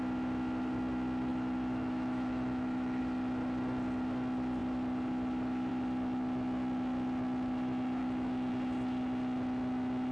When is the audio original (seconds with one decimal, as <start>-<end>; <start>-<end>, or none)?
0.0-1.3; 3.0-8.0; 8.5-10.1